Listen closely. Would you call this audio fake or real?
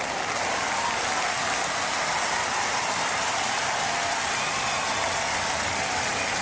real